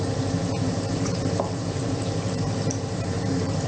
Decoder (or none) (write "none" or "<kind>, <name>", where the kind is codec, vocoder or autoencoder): vocoder, BigVGAN v2